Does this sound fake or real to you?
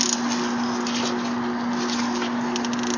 real